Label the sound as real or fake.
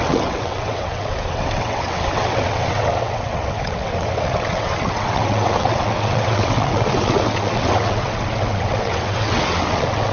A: fake